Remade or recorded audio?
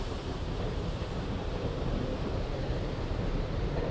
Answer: recorded